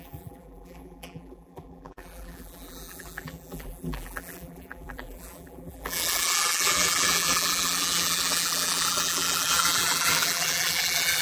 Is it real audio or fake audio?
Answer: fake